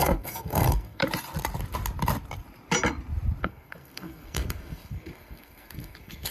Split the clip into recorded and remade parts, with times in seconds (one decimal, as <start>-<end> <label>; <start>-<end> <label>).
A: 0.0-1.0 remade; 1.0-3.4 recorded; 3.4-6.3 remade